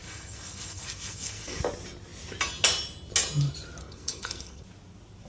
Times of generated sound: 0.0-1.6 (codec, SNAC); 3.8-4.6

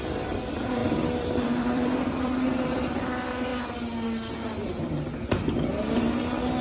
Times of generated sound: 0.0-3.5 (vocoder, BigVGAN v2)

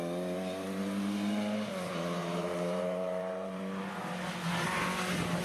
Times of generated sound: 2.2-3.6 (vocoder, BigVGAN v2)

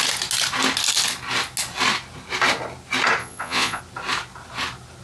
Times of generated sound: 3.2-3.8 (vocoder, Vocos)

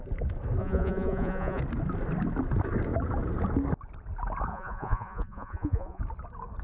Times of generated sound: 0.6-1.6 (vocoder, Vocos); 4.5-6.0

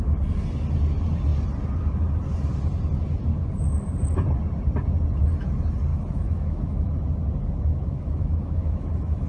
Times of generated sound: 5.9-6.9 (autoencoder, DAC-VAE); 7.7-9.3

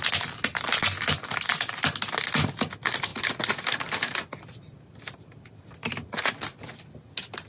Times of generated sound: none